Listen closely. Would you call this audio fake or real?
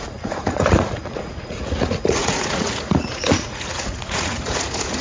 fake